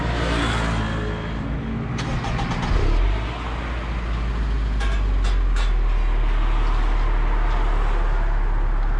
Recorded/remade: recorded